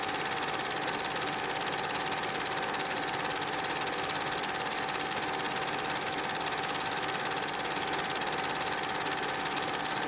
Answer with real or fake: real